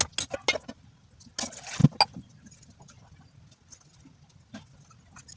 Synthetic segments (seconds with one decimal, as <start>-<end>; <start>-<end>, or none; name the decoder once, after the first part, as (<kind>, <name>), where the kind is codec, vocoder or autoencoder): none